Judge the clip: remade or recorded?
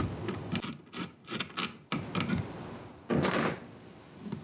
recorded